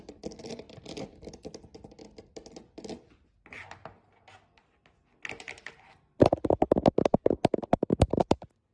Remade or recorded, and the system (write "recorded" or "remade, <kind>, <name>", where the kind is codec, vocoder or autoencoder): recorded